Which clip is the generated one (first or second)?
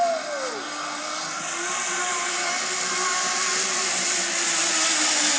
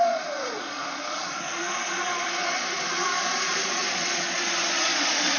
second